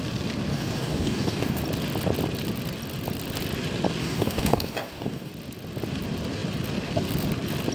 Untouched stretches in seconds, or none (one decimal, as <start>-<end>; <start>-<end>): 0.0-0.5; 1.6-4.0; 5.3-7.7